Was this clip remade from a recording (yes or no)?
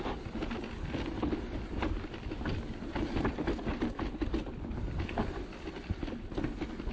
no